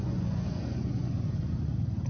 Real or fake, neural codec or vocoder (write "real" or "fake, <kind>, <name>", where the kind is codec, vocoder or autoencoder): fake, vocoder, Vocos